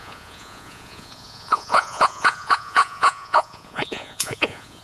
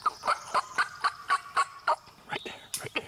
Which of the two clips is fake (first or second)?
first